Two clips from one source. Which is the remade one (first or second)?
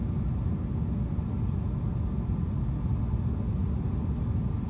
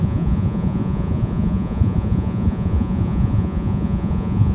second